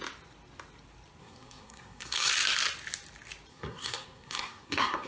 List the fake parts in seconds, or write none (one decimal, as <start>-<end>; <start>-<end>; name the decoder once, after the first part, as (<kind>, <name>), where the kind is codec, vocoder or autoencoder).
1.2-2.3 (codec, SNAC); 3.5-5.1